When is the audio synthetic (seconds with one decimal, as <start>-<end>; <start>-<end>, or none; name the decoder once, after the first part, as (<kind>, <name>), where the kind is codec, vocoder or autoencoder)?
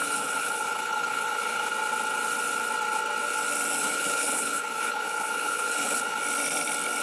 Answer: 0.0-1.7 (codec, HILCodec); 3.8-6.2